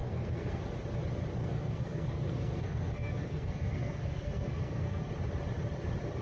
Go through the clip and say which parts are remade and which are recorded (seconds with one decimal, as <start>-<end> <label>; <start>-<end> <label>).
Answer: 0.0-0.6 remade; 0.6-1.4 recorded; 1.4-5.1 remade; 5.1-6.2 recorded